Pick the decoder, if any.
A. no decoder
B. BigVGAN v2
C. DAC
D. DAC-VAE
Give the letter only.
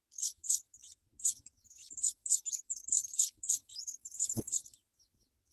D